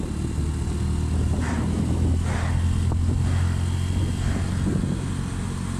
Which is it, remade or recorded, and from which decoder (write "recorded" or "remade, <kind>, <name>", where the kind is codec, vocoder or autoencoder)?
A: recorded